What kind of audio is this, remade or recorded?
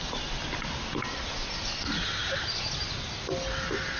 recorded